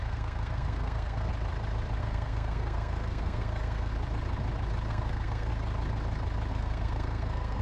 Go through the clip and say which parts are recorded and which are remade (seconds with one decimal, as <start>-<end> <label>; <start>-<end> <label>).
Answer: 0.0-1.3 remade; 1.3-2.0 recorded; 2.0-3.9 remade; 3.9-4.9 recorded; 4.9-5.5 remade; 5.5-6.5 recorded; 6.5-7.6 remade